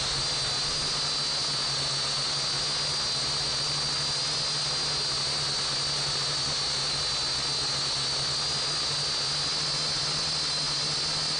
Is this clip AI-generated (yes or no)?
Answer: no